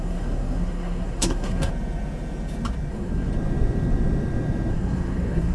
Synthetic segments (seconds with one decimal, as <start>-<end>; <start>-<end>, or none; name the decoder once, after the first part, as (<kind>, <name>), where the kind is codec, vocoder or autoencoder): 0.0-1.7 (codec, SNAC); 2.9-3.3; 4.7-5.5